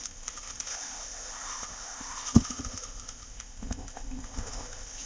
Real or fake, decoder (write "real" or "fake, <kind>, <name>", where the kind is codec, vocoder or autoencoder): fake, codec, ZipCodec